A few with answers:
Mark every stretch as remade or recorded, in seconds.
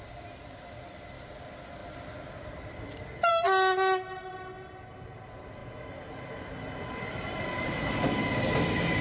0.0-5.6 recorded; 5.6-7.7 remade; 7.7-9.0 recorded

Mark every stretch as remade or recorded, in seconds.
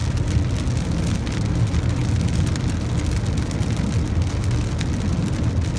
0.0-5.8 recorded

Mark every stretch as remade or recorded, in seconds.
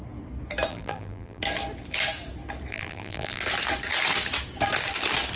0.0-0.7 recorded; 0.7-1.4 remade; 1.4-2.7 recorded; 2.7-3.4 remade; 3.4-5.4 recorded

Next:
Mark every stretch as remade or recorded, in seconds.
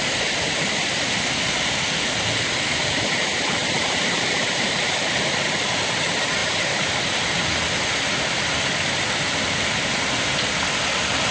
0.0-3.6 recorded; 3.6-4.9 remade; 4.9-11.3 recorded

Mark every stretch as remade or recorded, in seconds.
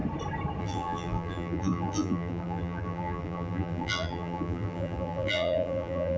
0.0-0.6 recorded; 0.6-6.2 remade